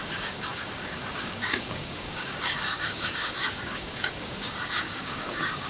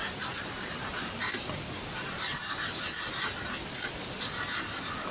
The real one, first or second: second